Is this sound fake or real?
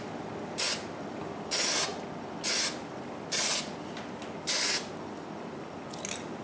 real